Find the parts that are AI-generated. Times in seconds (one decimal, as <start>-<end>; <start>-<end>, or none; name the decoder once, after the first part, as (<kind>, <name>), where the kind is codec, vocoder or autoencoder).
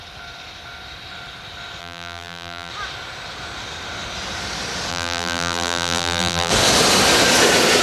1.8-2.7 (vocoder, BigVGAN v2); 4.9-6.5